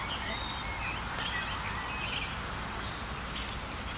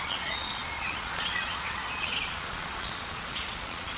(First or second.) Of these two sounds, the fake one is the second